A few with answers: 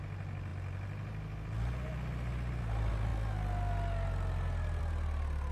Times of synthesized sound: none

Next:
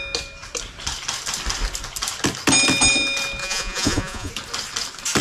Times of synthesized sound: 3.4-4.3 (vocoder, Vocos)

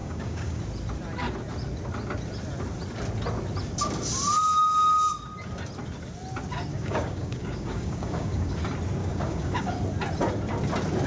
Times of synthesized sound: 0.0-0.6 (codec, DAC); 6.7-8.5; 9.0-9.7

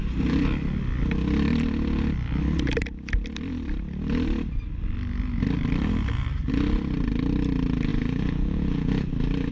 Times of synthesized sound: 7.9-9.1 (vocoder, Vocos)

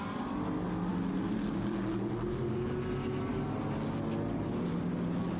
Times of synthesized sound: none

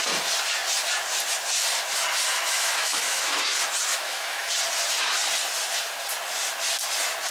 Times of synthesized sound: 2.3-3.4 (autoencoder, DAC-VAE); 3.9-4.5